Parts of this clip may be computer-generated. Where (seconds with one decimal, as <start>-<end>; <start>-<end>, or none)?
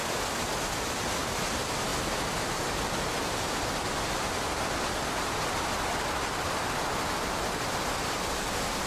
0.7-1.9; 6.1-8.9